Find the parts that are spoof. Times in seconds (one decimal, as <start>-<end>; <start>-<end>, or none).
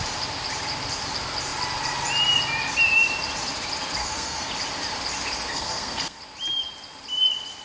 4.0-4.5; 5.5-6.2